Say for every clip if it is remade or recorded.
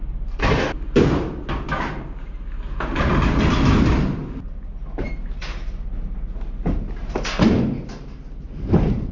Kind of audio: recorded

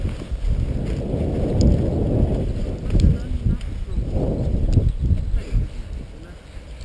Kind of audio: recorded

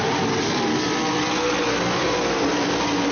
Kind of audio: recorded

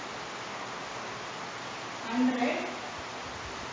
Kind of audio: recorded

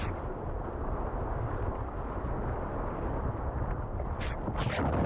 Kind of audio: recorded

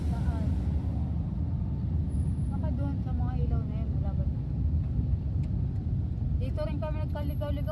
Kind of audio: recorded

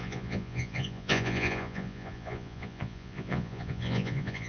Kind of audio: remade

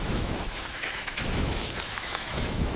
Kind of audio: remade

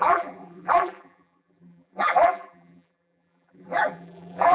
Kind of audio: remade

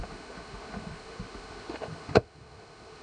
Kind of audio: remade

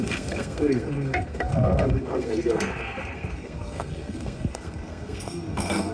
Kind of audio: remade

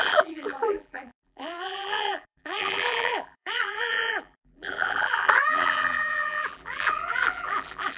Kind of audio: remade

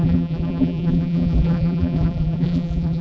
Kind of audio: remade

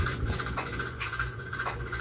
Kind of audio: remade